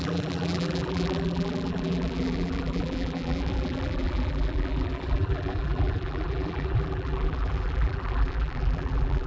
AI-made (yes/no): yes